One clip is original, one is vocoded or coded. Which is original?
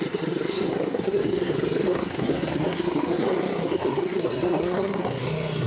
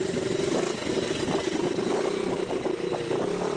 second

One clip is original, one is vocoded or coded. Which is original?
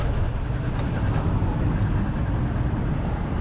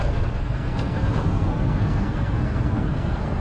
first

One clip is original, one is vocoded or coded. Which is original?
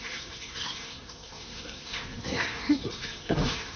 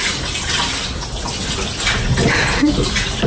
second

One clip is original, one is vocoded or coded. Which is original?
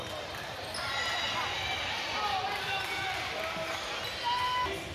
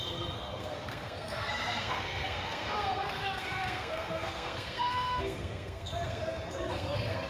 first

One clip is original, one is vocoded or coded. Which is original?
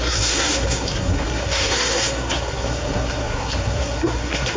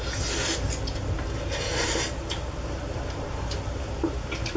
second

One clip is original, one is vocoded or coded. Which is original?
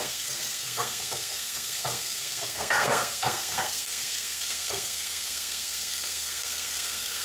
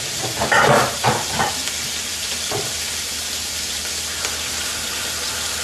second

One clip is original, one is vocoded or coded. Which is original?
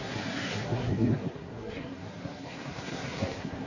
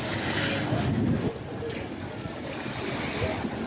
second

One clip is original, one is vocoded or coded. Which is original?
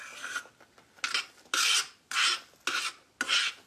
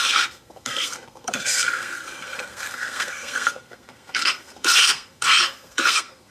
first